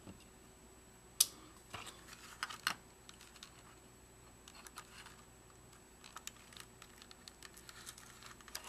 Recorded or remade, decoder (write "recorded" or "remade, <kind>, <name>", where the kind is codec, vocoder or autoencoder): recorded